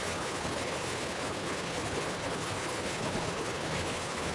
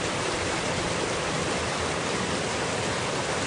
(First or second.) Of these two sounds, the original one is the second